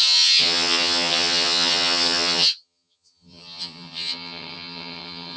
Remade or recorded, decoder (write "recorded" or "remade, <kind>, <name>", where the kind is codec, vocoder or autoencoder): remade, vocoder, HiFi-GAN